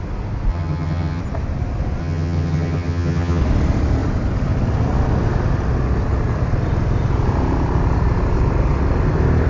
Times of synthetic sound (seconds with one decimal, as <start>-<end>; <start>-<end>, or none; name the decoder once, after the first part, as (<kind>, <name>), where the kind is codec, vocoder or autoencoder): 0.5-1.2 (vocoder, HiFi-GAN); 2.0-3.4